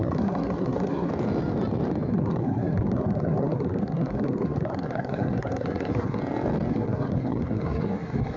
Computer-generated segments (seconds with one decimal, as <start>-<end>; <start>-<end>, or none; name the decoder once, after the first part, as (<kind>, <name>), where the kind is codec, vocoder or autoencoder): 0.0-1.1 (codec, SNAC); 2.1-6.2; 6.7-8.4